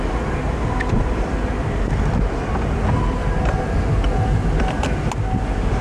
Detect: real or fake real